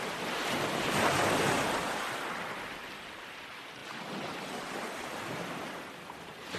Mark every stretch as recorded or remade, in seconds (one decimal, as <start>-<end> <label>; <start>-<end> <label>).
0.0-6.6 recorded